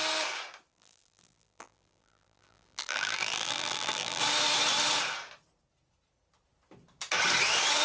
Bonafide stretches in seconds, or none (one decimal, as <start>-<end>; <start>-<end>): 0.0-0.7; 4.2-7.8